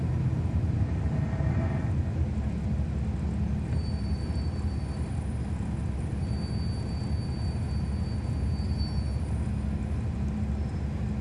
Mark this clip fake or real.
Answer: real